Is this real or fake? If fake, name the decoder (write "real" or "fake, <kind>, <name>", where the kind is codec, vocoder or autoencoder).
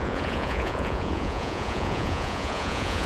fake, vocoder, Vocos